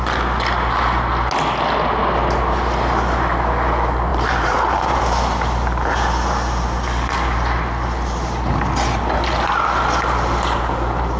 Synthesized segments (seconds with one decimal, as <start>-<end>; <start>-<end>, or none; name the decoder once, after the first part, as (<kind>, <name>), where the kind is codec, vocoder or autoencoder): 4.1-5.0 (vocoder, BigVGAN v2)